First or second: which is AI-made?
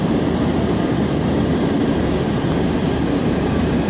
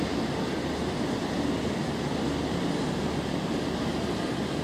first